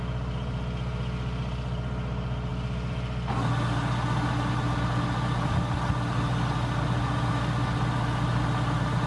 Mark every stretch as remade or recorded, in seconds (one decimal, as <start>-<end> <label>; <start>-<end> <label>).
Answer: 0.0-9.1 recorded